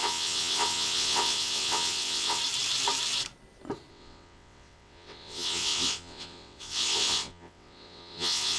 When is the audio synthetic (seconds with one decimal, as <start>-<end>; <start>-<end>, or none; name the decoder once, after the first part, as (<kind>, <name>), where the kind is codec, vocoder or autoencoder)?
0.0-2.4 (vocoder, WaveNeXt); 3.9-8.6